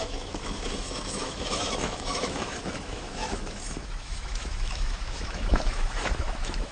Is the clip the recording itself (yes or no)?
no